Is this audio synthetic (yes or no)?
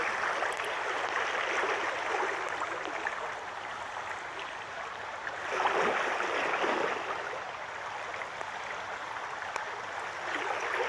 no